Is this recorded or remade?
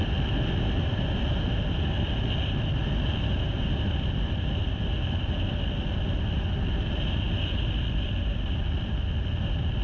recorded